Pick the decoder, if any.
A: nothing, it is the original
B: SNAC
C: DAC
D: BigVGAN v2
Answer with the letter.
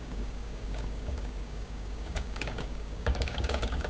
C